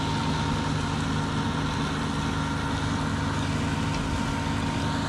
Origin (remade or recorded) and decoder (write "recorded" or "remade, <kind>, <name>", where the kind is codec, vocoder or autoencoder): recorded